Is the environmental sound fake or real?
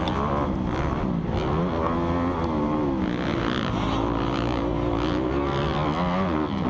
real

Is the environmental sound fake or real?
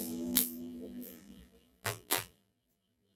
fake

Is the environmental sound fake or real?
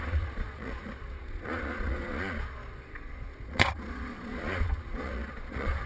fake